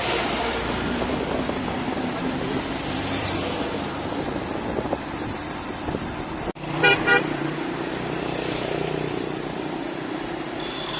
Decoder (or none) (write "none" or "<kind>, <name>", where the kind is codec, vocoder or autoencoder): vocoder, BigVGAN v2